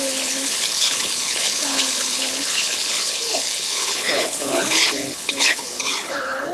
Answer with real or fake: fake